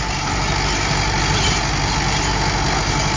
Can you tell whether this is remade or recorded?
recorded